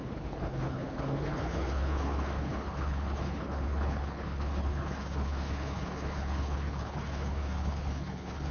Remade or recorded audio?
remade